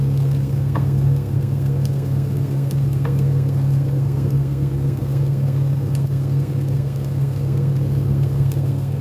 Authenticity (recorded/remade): remade